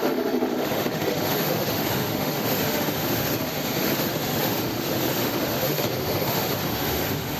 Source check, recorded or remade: remade